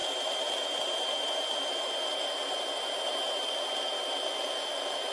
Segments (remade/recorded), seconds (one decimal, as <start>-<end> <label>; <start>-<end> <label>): 0.0-5.1 recorded